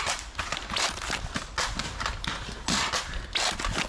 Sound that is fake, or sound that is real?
real